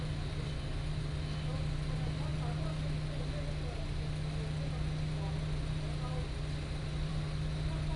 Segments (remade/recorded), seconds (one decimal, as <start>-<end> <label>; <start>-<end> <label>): 0.0-8.0 recorded